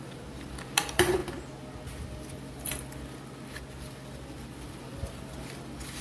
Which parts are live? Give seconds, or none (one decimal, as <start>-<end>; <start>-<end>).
1.2-4.8